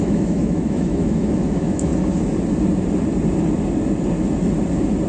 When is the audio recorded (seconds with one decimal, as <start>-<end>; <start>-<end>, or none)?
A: 1.9-5.1